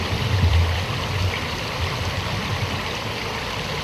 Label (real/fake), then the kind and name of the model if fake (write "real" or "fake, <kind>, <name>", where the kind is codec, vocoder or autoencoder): fake, vocoder, BigVGAN v2